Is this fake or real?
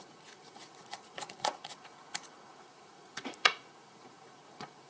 fake